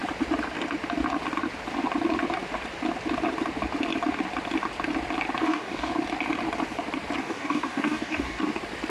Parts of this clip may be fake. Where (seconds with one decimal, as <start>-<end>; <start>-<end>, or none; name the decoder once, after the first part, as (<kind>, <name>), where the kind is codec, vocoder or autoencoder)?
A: 5.4-5.9 (codec, DAC); 7.2-8.4